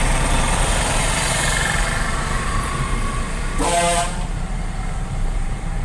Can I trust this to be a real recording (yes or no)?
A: no